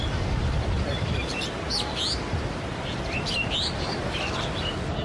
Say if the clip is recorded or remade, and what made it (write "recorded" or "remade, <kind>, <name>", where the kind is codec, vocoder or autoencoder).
recorded